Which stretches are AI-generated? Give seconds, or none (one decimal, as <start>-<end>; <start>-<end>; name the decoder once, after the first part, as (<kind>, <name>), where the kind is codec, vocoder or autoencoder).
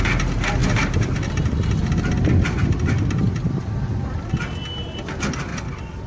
0.6-4.3 (vocoder, BigVGAN v2); 5.5-6.1